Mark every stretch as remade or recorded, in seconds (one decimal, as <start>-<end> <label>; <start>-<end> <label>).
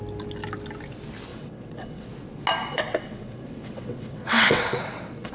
0.0-1.3 recorded; 1.3-2.1 remade; 2.1-2.7 recorded; 2.7-5.3 remade